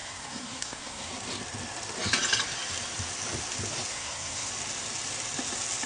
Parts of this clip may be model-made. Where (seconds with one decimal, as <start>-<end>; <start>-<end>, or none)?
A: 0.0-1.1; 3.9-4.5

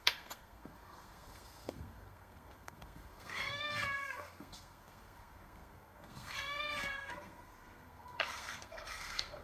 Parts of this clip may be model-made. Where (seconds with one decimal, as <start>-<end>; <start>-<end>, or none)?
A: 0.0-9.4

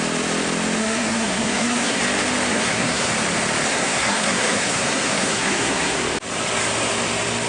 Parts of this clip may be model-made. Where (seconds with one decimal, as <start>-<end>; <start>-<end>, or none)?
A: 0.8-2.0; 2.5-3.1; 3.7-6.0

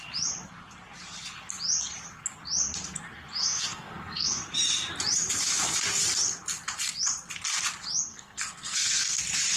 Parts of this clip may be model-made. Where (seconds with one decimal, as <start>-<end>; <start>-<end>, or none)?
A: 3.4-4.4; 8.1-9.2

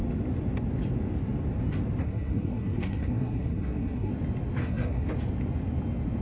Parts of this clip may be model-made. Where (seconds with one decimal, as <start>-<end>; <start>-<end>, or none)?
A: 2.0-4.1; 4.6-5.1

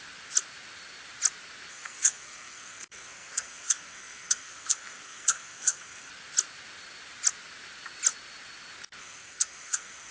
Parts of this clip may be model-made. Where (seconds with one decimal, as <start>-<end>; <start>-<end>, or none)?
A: 1.7-6.1; 9.0-10.1

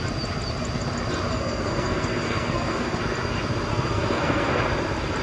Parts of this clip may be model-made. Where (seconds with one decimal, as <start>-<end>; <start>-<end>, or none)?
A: 1.3-3.0; 3.7-4.6